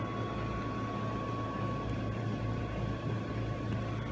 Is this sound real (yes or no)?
yes